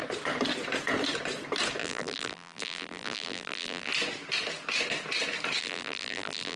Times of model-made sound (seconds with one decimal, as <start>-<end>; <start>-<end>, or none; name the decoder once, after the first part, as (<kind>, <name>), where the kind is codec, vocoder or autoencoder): 1.8-3.9 (vocoder, BigVGAN v2); 5.6-6.6